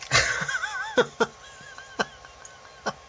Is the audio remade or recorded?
recorded